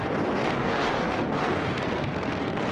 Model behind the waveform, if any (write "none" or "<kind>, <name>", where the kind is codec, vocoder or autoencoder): codec, SNAC